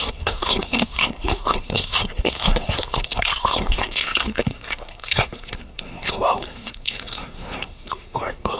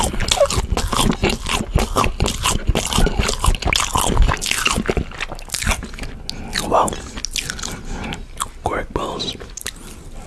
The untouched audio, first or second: second